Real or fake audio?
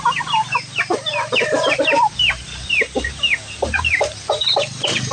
real